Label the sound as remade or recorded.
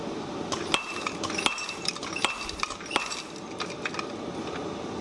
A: recorded